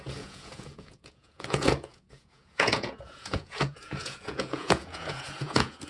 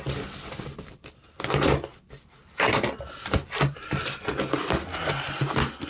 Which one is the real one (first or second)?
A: second